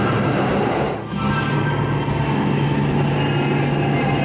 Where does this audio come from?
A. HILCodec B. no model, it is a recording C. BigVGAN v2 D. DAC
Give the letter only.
B